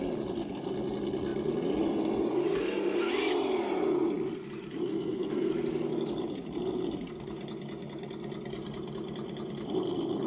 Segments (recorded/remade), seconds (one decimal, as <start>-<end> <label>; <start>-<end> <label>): 0.0-4.9 recorded; 4.9-5.5 remade; 5.5-10.3 recorded